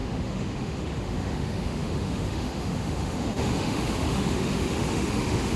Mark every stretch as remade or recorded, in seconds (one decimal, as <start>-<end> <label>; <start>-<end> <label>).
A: 0.0-5.6 remade